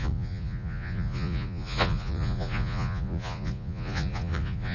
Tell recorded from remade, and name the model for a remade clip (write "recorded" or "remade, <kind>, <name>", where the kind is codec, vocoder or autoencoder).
remade, vocoder, Vocos